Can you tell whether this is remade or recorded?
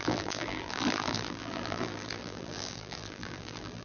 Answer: remade